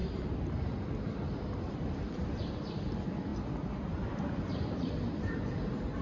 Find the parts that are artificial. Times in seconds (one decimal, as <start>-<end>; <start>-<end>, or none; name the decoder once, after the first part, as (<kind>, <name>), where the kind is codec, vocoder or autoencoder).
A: 0.0-2.7 (vocoder, BigVGAN v2)